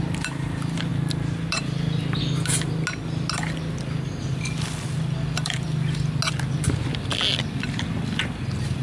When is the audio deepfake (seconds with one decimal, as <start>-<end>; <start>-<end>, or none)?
none